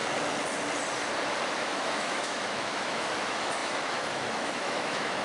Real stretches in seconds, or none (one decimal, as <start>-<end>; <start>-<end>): 0.0-1.5